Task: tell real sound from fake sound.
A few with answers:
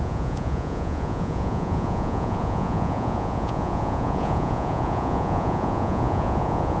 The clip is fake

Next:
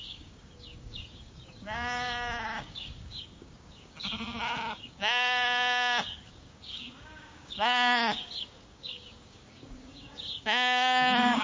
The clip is fake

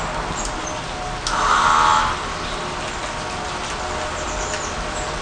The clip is real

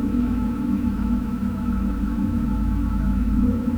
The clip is fake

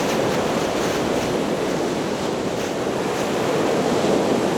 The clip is real